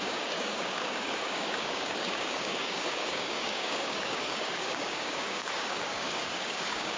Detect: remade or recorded remade